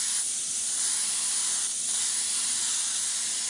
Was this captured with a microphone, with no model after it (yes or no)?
no